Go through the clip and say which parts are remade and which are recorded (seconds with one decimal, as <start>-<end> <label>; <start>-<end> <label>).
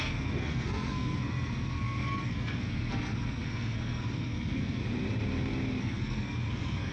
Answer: 0.0-4.8 remade; 4.8-5.8 recorded; 5.8-6.9 remade